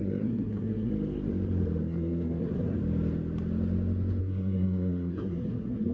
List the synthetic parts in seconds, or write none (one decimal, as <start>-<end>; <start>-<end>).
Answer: 0.0-0.9; 1.8-2.8; 4.2-5.9